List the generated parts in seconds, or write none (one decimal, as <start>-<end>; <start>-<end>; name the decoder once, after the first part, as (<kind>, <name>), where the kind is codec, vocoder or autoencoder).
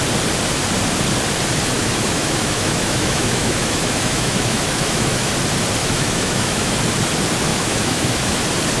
1.8-5.3 (autoencoder, DAC-VAE); 5.8-6.7; 7.5-8.4